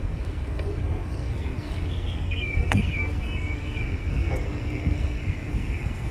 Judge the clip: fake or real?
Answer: fake